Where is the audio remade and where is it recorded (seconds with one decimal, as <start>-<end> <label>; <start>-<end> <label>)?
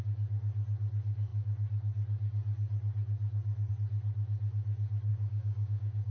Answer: 0.0-5.1 recorded; 5.1-6.1 remade